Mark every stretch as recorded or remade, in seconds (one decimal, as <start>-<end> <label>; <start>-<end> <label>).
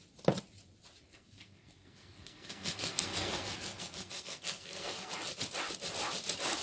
0.0-1.1 recorded; 1.1-5.1 remade; 5.1-6.6 recorded